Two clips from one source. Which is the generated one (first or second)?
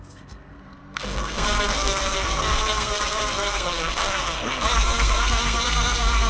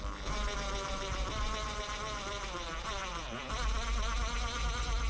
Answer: first